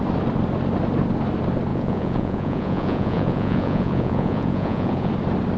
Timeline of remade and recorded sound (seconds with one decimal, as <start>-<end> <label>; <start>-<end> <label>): 0.0-1.7 recorded; 1.7-5.1 remade; 5.1-5.6 recorded